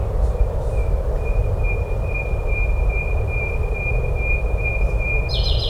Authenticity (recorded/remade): remade